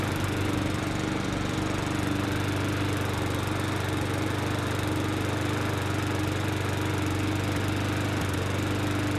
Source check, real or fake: real